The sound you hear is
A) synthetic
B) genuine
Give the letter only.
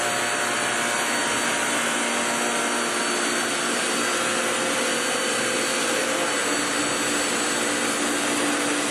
B